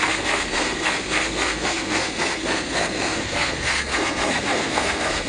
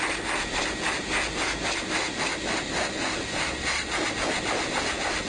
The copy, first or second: first